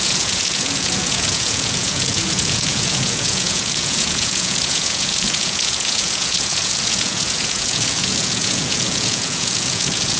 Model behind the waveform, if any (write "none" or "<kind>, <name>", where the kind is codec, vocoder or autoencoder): vocoder, Vocos